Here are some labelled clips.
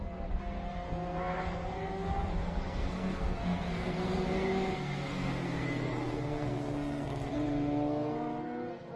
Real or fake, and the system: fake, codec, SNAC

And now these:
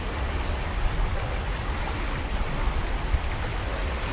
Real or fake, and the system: real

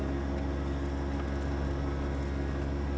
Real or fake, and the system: real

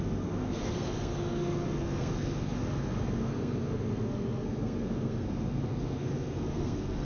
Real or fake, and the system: fake, codec, SNAC